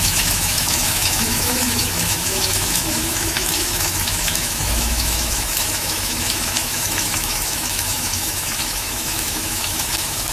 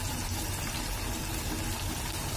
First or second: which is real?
second